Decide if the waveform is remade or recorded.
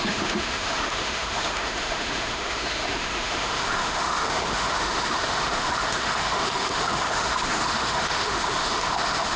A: remade